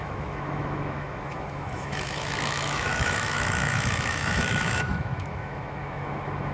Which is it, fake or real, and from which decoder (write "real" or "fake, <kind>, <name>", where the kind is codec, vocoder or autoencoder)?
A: fake, autoencoder, DAC-VAE